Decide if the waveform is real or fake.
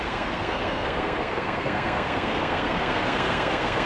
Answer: fake